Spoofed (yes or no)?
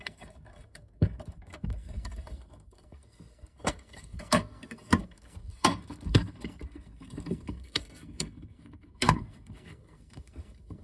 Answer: yes